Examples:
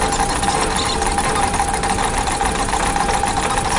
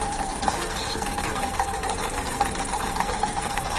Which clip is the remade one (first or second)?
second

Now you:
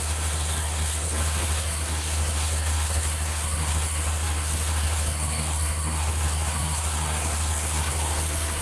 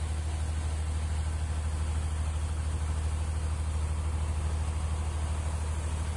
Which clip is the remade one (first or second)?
first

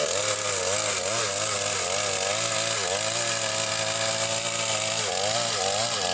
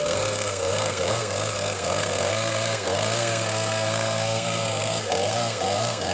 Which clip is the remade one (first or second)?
second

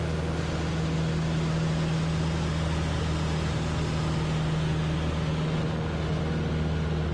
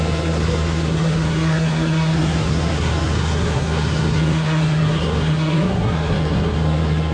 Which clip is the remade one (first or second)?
second